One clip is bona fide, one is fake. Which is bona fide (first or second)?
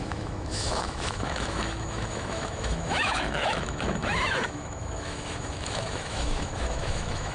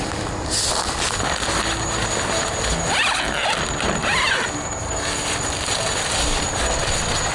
second